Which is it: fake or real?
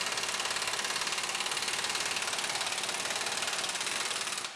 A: real